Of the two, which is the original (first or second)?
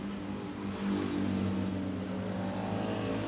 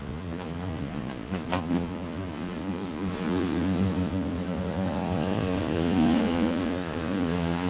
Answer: first